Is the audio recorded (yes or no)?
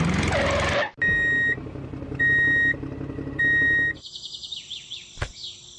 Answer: yes